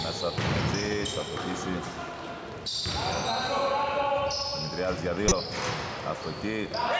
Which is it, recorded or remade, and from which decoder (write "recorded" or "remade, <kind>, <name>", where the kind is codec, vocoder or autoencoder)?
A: recorded